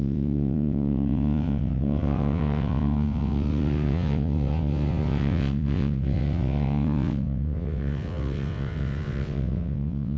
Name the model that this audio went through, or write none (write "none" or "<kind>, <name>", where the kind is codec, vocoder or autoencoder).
vocoder, WaveNeXt